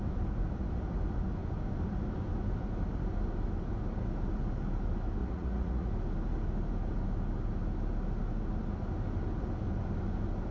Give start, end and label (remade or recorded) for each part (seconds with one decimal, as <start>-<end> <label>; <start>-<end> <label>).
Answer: 0.0-5.2 recorded; 5.2-5.9 remade; 5.9-10.5 recorded